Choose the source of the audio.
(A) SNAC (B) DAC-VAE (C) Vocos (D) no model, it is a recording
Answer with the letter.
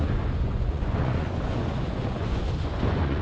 C